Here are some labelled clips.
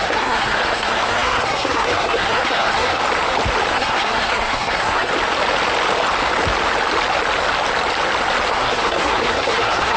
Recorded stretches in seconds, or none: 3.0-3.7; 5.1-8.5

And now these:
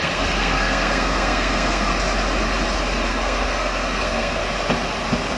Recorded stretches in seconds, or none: 1.9-3.1; 4.4-5.4

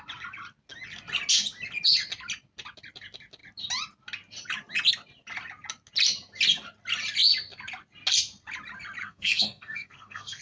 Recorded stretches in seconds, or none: 0.0-9.0

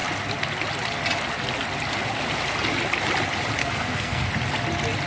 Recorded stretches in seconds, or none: 0.0-3.6; 4.3-5.1

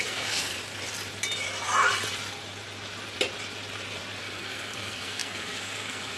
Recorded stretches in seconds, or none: 0.5-4.2